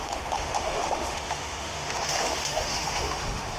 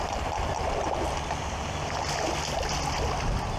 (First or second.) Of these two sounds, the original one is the second